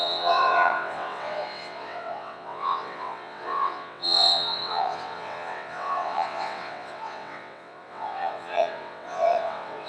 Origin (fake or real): fake